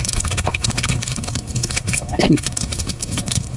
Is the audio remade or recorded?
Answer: remade